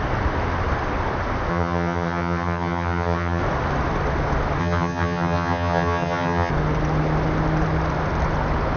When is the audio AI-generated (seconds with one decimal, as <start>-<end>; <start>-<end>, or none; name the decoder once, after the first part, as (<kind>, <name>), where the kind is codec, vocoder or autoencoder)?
1.5-3.4 (vocoder, HiFi-GAN); 4.6-6.5